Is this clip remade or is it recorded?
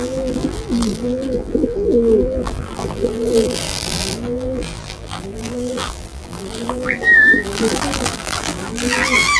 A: remade